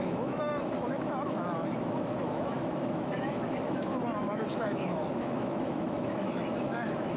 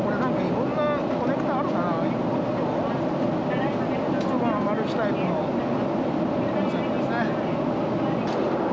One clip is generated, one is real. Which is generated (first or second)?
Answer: first